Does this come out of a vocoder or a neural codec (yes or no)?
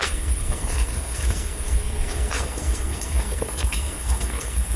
yes